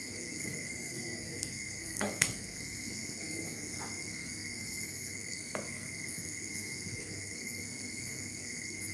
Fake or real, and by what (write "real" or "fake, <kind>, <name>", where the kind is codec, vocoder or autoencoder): fake, codec, SNAC